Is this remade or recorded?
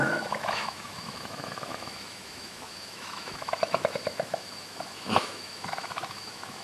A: remade